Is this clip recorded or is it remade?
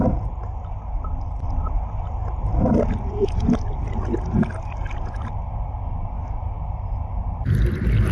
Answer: recorded